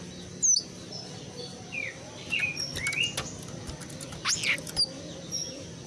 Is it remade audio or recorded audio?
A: recorded